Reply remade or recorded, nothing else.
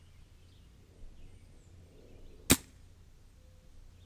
recorded